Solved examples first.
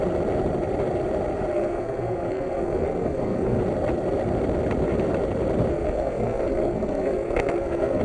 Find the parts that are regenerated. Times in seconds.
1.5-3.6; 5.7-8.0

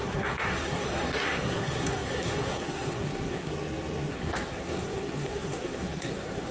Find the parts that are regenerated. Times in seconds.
0.0-3.5; 4.1-6.5

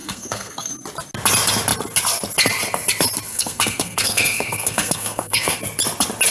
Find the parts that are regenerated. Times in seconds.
0.0-0.7; 3.3-5.6

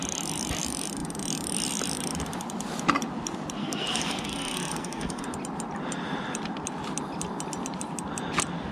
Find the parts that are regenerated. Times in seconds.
3.6-5.2